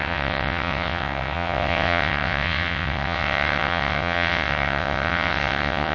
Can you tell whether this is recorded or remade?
remade